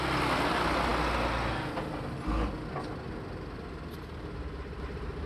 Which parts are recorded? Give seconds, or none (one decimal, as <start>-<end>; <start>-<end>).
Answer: 0.0-5.3